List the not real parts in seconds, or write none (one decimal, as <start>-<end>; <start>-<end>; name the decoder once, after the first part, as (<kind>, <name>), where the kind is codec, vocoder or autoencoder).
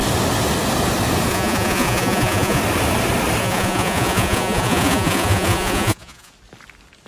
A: 1.3-2.6 (vocoder, Vocos); 3.4-6.3